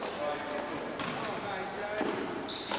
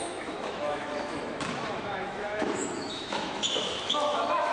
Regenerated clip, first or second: second